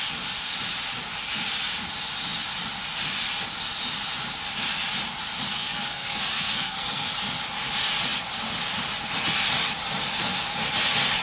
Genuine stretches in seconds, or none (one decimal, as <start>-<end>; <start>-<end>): 0.0-5.6; 7.1-11.2